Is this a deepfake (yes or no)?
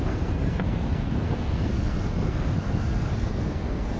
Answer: yes